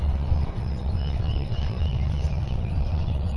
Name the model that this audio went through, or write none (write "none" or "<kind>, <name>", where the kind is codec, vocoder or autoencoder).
vocoder, WaveNeXt